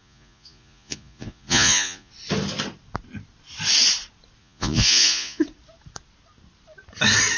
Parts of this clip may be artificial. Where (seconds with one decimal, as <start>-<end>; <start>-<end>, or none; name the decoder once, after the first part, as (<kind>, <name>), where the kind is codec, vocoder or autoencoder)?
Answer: 0.0-2.1 (vocoder, Vocos); 4.4-5.4